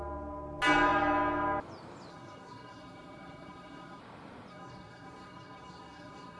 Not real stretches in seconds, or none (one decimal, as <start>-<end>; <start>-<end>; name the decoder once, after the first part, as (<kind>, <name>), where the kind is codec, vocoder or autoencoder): 2.1-4.0 (codec, SNAC); 4.5-6.4